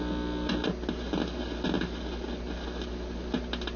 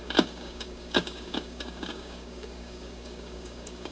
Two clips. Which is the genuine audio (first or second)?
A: first